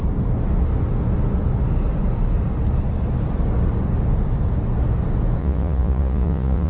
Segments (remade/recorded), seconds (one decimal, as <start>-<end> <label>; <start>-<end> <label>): 0.0-5.4 recorded; 5.4-6.7 remade